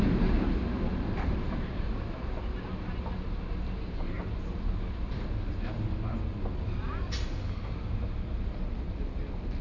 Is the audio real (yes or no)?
yes